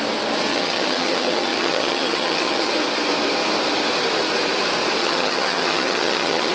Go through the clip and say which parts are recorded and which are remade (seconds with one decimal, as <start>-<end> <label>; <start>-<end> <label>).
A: 0.0-0.5 recorded; 0.5-2.7 remade; 2.7-5.0 recorded; 5.0-6.5 remade